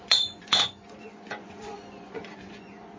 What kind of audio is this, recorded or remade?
remade